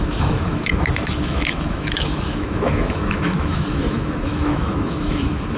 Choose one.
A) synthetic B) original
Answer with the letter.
A